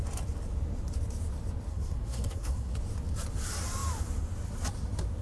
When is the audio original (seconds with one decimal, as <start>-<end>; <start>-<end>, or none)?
0.0-1.7; 2.7-5.2